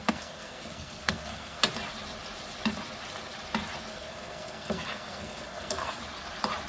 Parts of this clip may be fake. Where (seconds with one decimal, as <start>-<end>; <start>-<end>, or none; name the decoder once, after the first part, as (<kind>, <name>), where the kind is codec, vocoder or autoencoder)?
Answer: 0.0-1.6 (codec, SNAC); 3.9-6.0